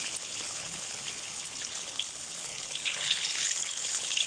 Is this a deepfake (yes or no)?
yes